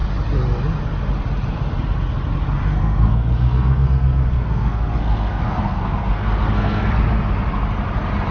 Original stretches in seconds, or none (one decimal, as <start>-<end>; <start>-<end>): 0.0-2.7; 7.0-8.3